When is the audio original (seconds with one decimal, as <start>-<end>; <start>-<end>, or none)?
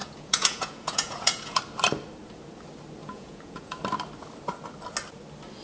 1.6-3.0; 3.8-5.6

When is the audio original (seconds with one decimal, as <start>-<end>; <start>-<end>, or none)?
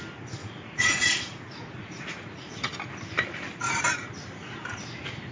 0.0-0.4; 2.7-5.3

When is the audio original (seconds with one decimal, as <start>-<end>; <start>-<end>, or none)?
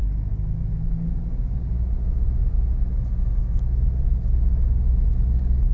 0.0-5.7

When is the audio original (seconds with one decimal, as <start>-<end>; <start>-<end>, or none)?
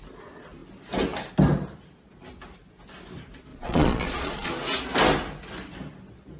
0.0-3.5; 4.5-6.4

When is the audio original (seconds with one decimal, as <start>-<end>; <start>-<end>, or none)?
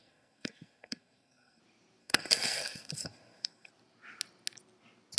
1.6-2.0; 3.7-5.2